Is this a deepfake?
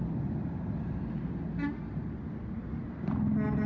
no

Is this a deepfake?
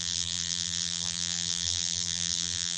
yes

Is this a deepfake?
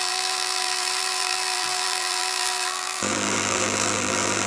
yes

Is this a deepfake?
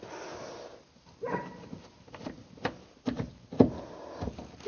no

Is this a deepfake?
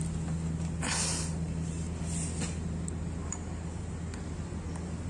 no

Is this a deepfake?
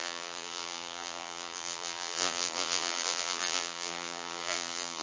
yes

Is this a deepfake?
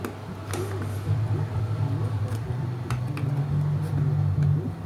no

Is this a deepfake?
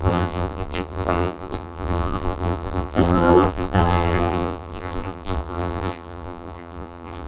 yes